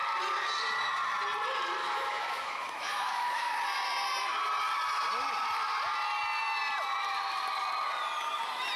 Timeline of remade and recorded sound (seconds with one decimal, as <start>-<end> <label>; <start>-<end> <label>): 0.0-1.8 recorded; 1.8-3.5 remade; 3.5-8.8 recorded